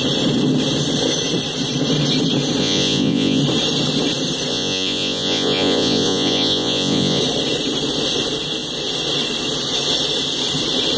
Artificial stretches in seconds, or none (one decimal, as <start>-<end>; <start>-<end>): 2.6-3.4; 4.5-7.2